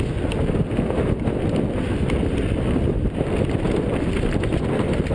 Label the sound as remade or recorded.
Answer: recorded